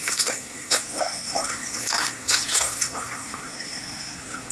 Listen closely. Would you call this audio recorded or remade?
remade